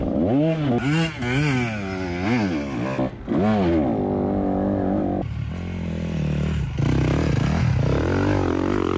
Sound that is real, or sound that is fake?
real